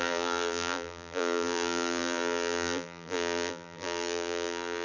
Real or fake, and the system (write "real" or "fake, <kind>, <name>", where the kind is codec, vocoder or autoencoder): fake, vocoder, BigVGAN v2